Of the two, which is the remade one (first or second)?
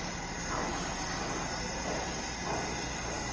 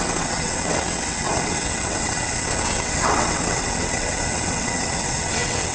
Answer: second